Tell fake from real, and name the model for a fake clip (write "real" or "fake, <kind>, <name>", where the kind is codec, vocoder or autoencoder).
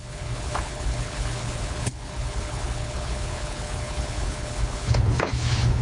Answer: fake, codec, HILCodec